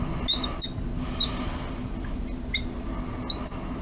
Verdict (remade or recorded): recorded